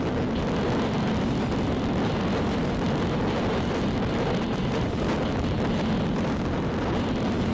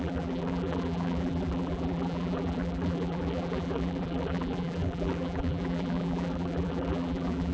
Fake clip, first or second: second